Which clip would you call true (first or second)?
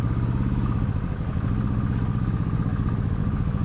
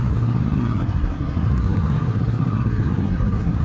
first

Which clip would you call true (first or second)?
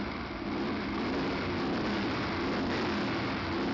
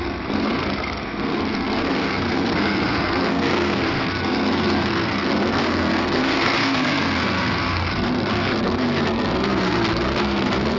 first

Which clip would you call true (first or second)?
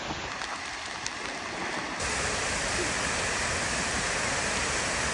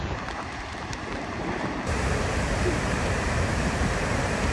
first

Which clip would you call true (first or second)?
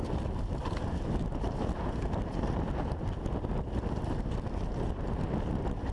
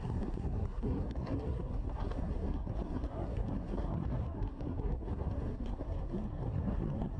first